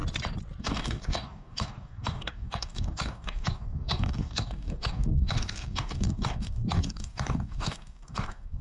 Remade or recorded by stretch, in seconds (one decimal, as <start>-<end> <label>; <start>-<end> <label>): 0.0-0.6 recorded; 0.6-8.6 remade